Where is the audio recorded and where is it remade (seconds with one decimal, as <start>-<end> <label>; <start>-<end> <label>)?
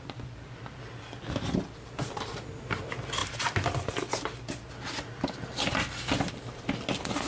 0.0-7.3 recorded